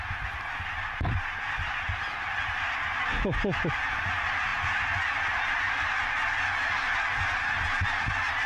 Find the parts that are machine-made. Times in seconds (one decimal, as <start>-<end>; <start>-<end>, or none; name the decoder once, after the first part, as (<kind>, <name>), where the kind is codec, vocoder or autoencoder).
none